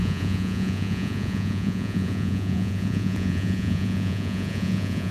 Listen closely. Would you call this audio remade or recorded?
remade